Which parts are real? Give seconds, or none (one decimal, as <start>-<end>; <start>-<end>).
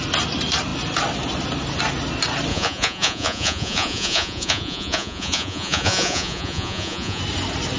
0.0-2.5; 7.2-7.8